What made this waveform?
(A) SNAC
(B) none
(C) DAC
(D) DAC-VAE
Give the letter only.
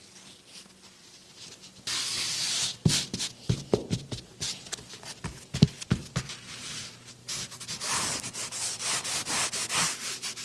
B